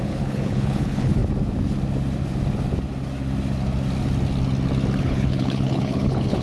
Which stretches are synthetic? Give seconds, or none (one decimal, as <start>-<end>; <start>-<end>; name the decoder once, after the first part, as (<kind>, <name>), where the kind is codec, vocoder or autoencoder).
0.0-1.2 (codec, HILCodec); 5.0-6.4